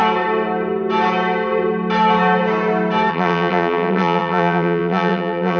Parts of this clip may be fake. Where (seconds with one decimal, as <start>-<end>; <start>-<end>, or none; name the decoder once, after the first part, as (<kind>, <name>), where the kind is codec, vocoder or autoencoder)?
3.1-5.6 (vocoder, BigVGAN v2)

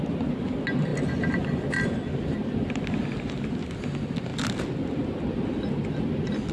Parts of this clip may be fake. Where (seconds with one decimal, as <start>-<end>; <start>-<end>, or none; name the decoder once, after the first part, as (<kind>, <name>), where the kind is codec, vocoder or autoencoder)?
none

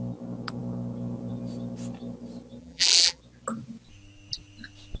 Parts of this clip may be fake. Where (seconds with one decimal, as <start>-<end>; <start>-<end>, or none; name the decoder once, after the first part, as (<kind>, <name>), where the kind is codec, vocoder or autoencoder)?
2.6-3.2 (vocoder, BigVGAN v2)